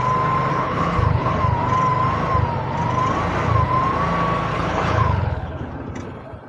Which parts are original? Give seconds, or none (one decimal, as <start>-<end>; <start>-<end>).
0.0-0.5; 1.4-4.5; 5.7-6.5